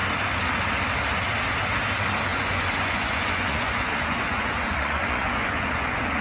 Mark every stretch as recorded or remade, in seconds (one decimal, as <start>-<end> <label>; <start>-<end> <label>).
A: 0.0-2.3 recorded; 2.3-6.2 remade